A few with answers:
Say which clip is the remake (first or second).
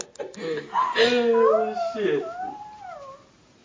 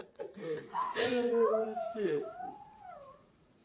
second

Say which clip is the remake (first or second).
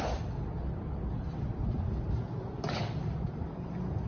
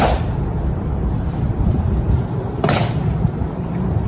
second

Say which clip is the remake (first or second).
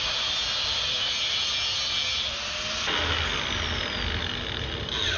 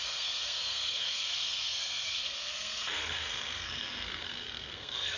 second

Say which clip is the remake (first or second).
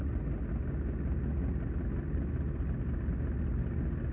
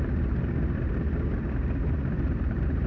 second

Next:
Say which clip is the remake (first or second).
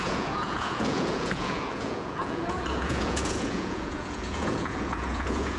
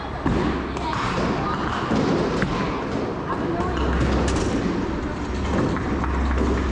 first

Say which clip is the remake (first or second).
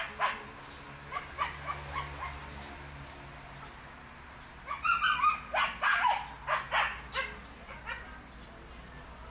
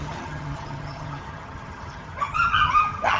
second